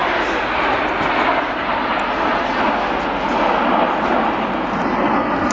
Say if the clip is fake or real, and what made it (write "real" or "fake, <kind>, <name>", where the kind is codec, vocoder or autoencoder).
real